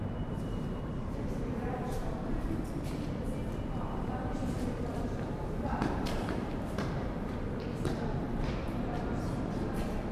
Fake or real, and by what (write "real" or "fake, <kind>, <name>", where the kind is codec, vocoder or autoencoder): fake, vocoder, BigVGAN v2